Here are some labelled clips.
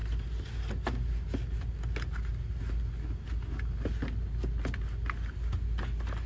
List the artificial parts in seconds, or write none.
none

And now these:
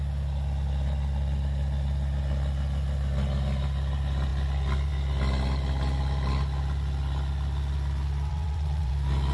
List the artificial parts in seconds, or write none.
8.3-8.9 (vocoder, WaveNeXt)